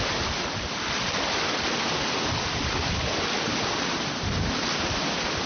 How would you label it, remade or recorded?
recorded